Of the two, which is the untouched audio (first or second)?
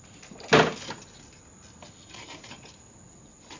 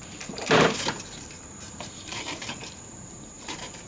first